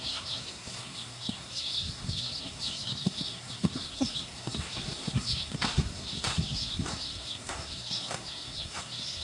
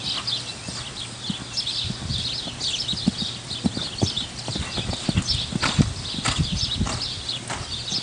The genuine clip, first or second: second